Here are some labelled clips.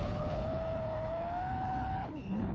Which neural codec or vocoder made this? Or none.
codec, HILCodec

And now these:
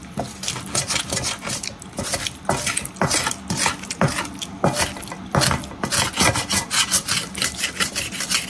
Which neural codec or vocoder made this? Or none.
none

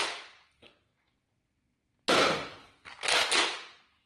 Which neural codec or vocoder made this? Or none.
none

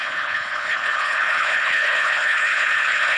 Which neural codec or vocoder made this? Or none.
codec, HILCodec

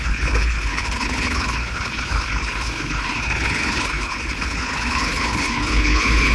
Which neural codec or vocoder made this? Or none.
codec, HILCodec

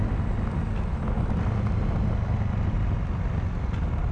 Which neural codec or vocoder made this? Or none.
none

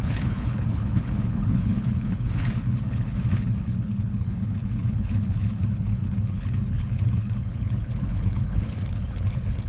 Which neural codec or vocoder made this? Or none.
codec, HILCodec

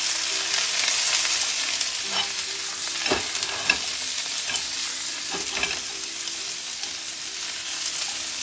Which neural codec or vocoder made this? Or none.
none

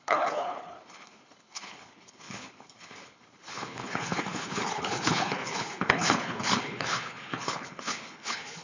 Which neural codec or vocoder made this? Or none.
codec, HILCodec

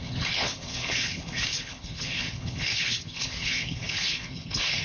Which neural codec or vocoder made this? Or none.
codec, HILCodec